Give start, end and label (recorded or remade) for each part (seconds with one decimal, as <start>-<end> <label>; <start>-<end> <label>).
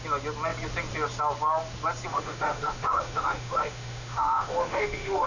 0.0-2.1 recorded; 2.1-5.3 remade